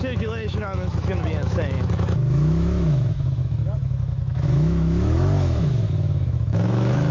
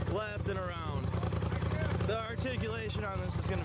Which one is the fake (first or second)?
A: first